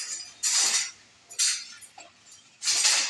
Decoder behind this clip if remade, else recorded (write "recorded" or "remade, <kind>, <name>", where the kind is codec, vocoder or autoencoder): recorded